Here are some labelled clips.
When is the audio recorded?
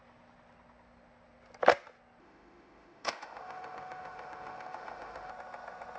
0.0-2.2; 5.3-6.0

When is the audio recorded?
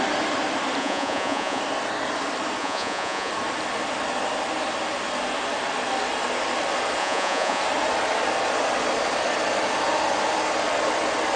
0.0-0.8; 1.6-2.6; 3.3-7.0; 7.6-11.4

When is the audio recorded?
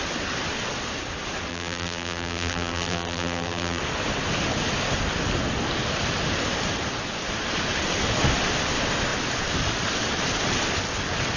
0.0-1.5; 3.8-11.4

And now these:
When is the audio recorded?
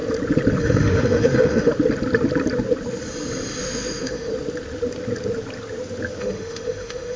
0.0-0.6; 1.7-3.6; 4.3-6.2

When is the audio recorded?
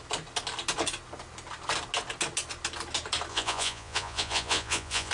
0.0-3.3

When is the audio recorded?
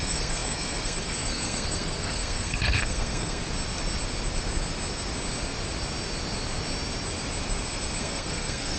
3.4-8.0